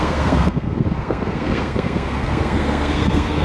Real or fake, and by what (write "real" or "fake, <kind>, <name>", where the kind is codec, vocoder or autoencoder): fake, codec, SNAC